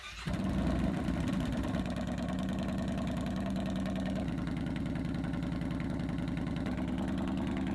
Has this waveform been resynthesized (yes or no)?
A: no